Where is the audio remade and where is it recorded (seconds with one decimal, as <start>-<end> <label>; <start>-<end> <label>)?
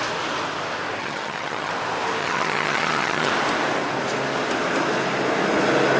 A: 0.0-1.0 recorded; 1.0-1.7 remade; 1.7-2.2 recorded; 2.2-3.3 remade; 3.3-6.0 recorded